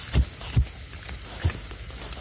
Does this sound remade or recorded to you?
recorded